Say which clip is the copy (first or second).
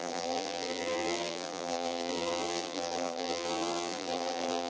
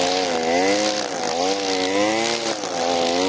first